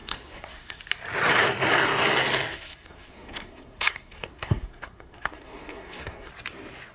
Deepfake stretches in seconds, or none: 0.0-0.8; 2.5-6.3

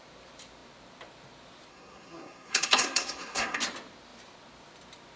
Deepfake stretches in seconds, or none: 1.7-3.6

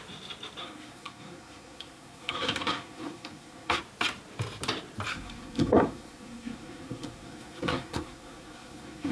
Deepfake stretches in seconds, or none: 0.6-3.8; 5.1-9.1

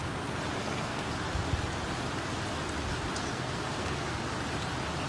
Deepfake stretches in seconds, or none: 0.6-1.1; 3.2-4.3

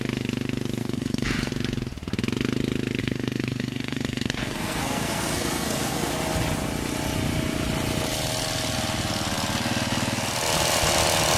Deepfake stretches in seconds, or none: 0.8-1.5; 3.0-6.1

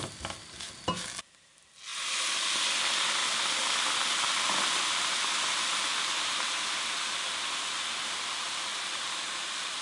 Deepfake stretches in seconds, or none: none

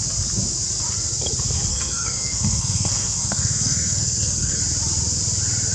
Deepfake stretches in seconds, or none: 1.7-4.6